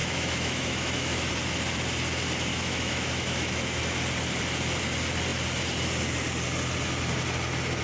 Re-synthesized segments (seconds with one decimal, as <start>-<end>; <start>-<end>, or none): 0.0-1.3; 2.5-3.8